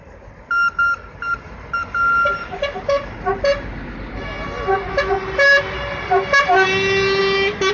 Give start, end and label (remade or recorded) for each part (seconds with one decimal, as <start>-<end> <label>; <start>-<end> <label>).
0.0-7.7 recorded